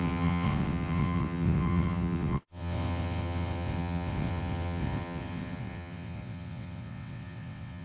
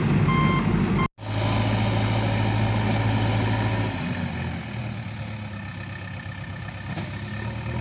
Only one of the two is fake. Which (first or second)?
first